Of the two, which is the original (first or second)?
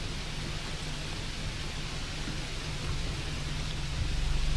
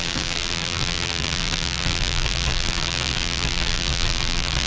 first